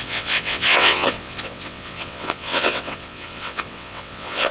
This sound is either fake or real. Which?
fake